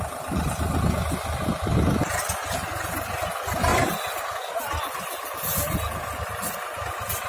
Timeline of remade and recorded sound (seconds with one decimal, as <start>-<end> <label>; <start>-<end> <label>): 0.0-3.7 recorded; 3.7-4.2 remade; 4.2-7.3 recorded